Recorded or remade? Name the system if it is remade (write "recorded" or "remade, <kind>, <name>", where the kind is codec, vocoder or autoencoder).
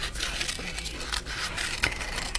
remade, vocoder, BigVGAN v2